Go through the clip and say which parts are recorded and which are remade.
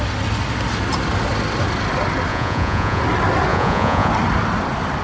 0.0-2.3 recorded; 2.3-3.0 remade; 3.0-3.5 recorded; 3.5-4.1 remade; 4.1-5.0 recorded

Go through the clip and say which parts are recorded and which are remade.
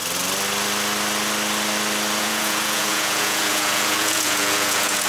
0.0-2.2 recorded; 2.2-5.1 remade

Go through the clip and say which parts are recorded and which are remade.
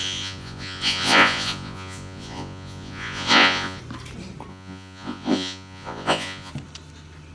0.0-3.8 remade; 3.8-4.5 recorded; 4.5-6.5 remade; 6.5-7.3 recorded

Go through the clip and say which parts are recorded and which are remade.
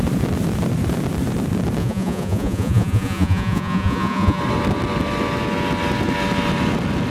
0.0-1.8 recorded; 1.8-4.4 remade; 4.4-7.1 recorded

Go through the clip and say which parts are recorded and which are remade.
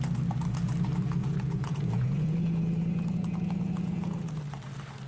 0.0-1.2 recorded; 1.2-4.3 remade; 4.3-5.1 recorded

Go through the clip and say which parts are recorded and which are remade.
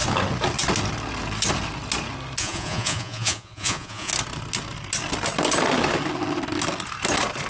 0.0-2.4 recorded; 2.4-4.1 remade; 4.1-7.5 recorded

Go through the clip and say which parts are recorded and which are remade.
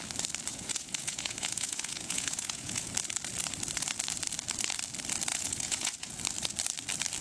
0.0-0.5 recorded; 0.5-2.9 remade; 2.9-5.3 recorded; 5.3-6.1 remade; 6.1-7.2 recorded